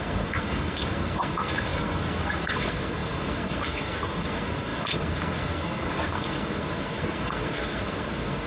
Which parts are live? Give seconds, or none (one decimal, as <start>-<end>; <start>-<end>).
none